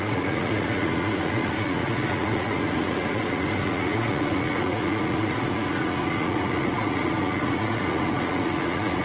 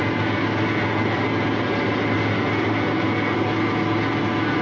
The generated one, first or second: first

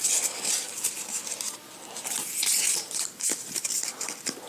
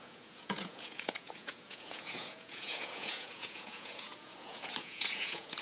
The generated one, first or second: second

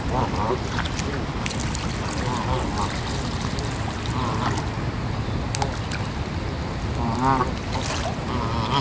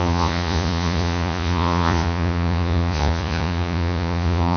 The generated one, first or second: second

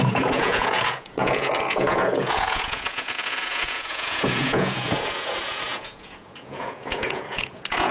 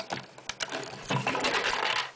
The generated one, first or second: first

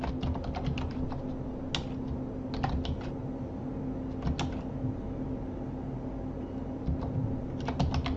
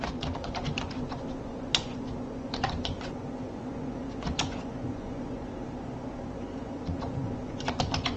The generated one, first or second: second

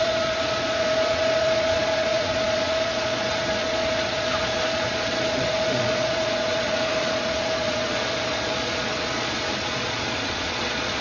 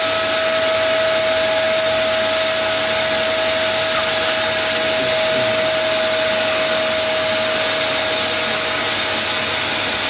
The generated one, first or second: first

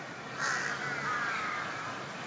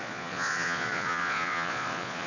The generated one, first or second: second